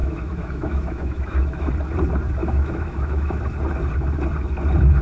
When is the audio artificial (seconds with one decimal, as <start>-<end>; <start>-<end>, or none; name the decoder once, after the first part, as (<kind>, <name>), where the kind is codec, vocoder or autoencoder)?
0.0-1.7 (autoencoder, DAC-VAE); 2.4-3.4